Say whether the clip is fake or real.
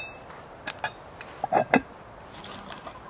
real